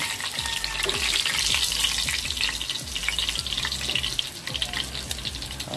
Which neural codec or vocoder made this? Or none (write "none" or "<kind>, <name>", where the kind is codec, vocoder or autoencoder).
none